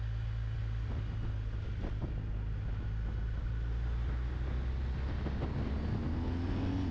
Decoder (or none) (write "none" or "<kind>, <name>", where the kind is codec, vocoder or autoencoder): none